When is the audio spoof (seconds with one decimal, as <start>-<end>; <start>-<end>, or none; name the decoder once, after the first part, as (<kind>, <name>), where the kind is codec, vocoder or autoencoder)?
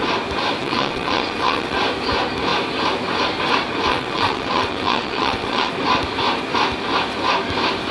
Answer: 0.6-1.8 (vocoder, WaveNeXt); 3.9-5.7